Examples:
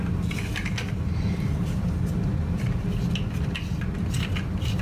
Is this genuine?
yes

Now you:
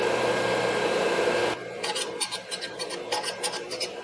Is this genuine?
no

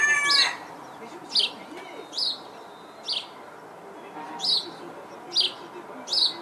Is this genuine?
yes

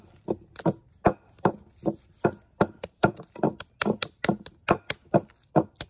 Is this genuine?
yes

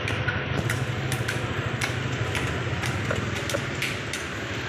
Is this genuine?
yes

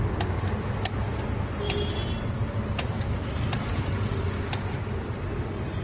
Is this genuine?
yes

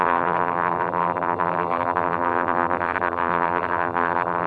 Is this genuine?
no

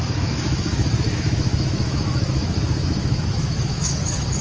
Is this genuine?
no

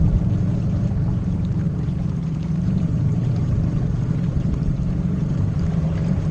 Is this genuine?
no